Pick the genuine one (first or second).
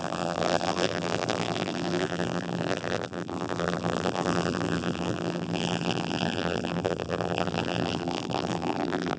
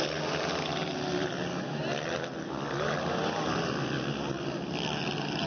second